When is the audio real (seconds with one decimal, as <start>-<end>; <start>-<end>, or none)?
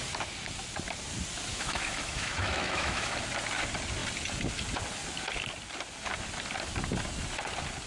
0.0-1.5; 3.1-7.9